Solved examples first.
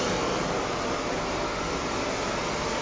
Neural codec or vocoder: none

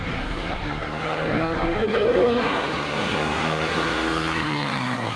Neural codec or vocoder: codec, SNAC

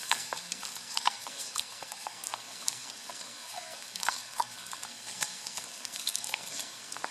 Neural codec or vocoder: codec, SNAC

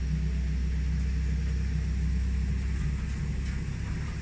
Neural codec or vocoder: none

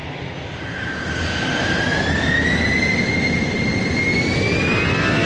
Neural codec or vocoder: none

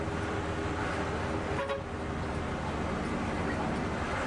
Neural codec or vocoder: none